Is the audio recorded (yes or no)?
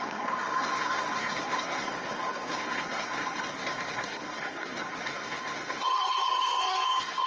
no